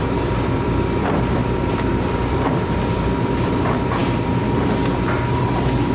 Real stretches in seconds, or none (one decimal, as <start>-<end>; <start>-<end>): none